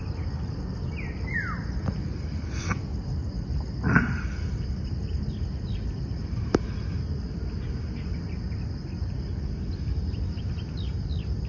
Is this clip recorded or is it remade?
recorded